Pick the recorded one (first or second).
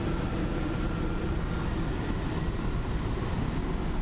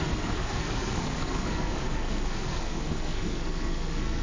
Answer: first